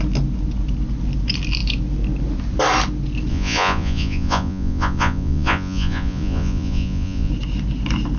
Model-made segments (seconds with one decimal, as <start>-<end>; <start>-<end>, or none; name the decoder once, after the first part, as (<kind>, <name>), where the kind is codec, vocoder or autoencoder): 3.3-7.3 (vocoder, Vocos)